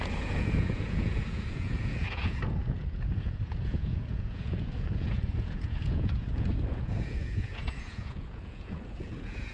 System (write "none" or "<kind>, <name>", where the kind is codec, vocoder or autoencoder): vocoder, Vocos